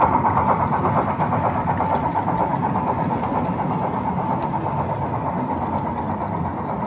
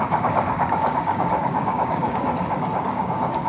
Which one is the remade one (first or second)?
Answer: second